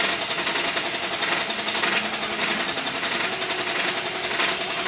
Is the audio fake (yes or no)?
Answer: no